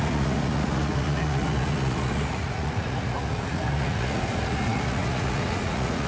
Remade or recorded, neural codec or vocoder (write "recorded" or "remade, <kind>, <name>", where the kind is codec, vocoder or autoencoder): remade, vocoder, Vocos